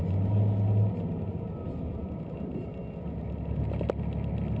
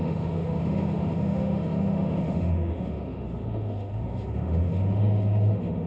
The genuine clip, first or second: first